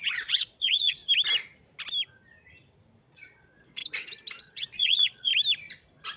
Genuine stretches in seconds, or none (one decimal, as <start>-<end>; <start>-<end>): 1.0-3.0; 3.8-4.4; 5.3-6.2